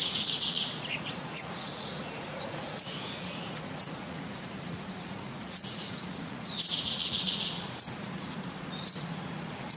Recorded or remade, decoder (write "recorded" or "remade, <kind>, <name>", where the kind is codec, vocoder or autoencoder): remade, vocoder, Vocos